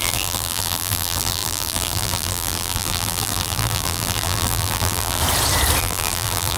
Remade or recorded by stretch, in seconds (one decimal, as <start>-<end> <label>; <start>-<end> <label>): 0.0-5.2 remade; 5.2-5.8 recorded; 5.8-6.6 remade